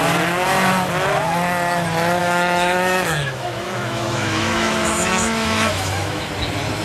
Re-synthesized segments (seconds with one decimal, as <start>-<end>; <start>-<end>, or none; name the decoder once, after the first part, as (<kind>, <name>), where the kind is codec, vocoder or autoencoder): 2.2-6.3 (autoencoder, DAC-VAE)